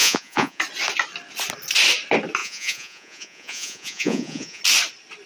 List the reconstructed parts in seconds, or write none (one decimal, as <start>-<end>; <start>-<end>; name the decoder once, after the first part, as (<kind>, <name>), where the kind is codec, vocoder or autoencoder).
0.0-0.6 (vocoder, Vocos); 2.4-4.6